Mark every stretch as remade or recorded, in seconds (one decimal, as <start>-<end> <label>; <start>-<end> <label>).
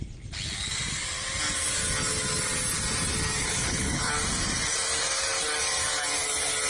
0.0-3.4 recorded; 3.4-4.1 remade; 4.1-6.7 recorded